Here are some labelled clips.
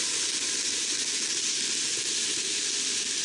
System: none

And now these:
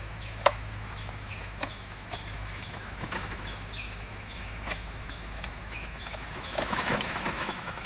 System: autoencoder, DAC-VAE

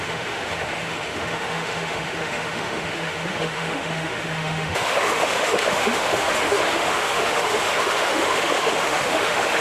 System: autoencoder, DAC-VAE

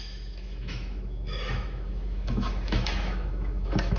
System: autoencoder, DAC-VAE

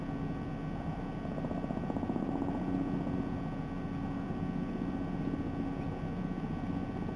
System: none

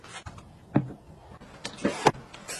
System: none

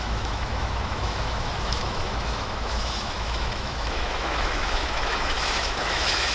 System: autoencoder, DAC-VAE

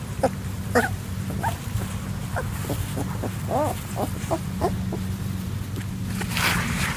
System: none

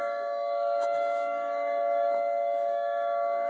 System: autoencoder, DAC-VAE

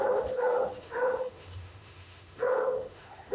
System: autoencoder, DAC-VAE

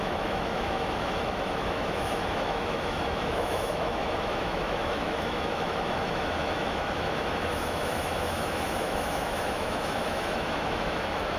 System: autoencoder, DAC-VAE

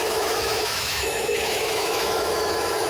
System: autoencoder, DAC-VAE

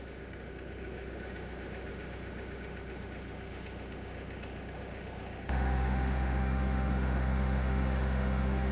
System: autoencoder, DAC-VAE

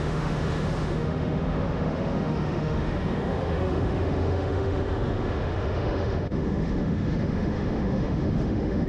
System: autoencoder, DAC-VAE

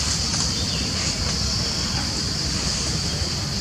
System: none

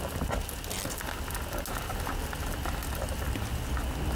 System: none